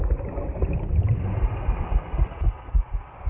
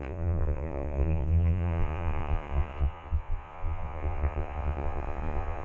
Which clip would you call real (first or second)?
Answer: first